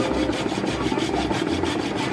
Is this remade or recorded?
recorded